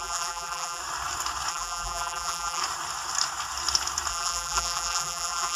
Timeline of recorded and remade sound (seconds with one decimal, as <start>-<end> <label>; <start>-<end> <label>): 0.0-0.8 remade; 0.8-1.5 recorded; 1.5-2.6 remade; 2.6-4.1 recorded; 4.1-5.6 remade